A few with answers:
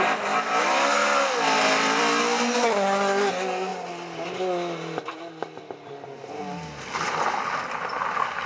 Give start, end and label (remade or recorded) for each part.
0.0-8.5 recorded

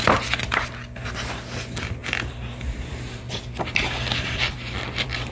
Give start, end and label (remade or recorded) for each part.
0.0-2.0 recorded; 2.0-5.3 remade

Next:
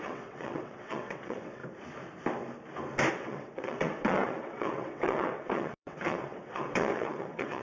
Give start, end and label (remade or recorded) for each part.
0.0-1.6 remade; 1.6-3.1 recorded; 3.1-7.6 remade